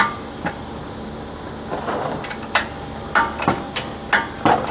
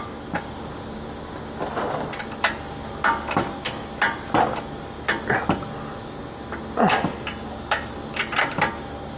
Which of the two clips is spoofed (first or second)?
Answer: first